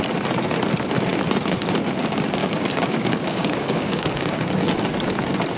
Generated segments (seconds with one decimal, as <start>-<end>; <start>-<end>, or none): 2.4-4.6